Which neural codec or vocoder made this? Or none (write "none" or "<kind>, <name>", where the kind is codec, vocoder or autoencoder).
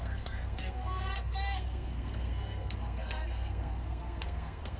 codec, SNAC